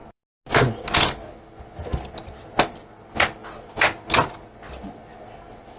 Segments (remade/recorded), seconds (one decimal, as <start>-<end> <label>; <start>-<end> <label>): 0.0-5.8 recorded